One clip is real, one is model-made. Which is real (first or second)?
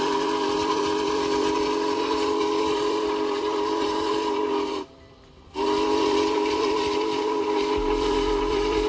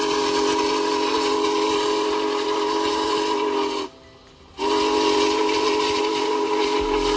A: second